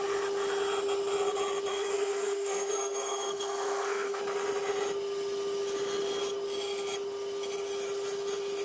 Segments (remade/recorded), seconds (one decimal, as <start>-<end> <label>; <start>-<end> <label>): 0.0-1.7 recorded; 1.7-4.2 remade; 4.2-8.6 recorded